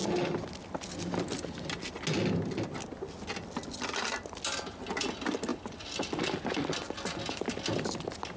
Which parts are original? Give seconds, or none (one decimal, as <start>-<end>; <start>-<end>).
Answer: 0.0-8.4